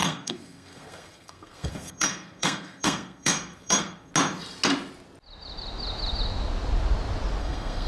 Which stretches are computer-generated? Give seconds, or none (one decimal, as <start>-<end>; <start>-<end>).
0.0-4.1; 7.4-7.9